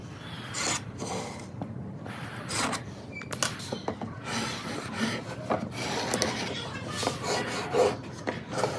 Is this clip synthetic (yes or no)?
no